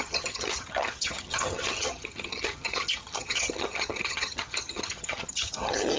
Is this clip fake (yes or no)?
yes